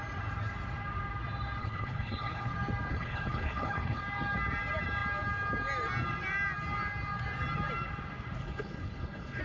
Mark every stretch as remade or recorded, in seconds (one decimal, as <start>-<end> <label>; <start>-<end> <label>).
0.0-1.6 recorded; 1.6-2.5 remade; 2.5-2.9 recorded; 2.9-4.0 remade; 4.0-8.4 recorded; 8.4-9.4 remade